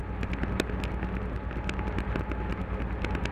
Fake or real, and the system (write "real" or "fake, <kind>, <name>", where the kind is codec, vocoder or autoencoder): real